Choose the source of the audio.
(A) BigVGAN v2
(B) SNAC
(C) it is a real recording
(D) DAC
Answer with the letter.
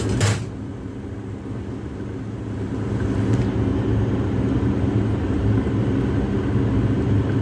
C